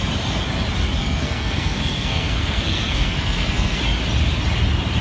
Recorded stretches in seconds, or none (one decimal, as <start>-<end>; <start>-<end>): 0.0-1.0; 3.8-5.0